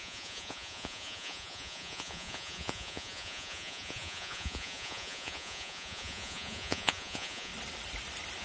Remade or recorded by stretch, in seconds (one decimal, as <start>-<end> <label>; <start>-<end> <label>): 0.0-7.5 remade; 7.5-8.4 recorded